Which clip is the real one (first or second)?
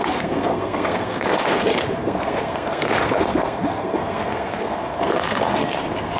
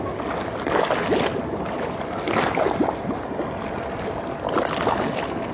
second